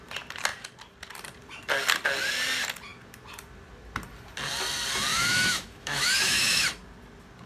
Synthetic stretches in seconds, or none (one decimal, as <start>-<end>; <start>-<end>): 5.1-6.6